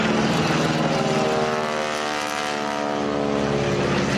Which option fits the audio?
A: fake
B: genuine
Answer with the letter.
B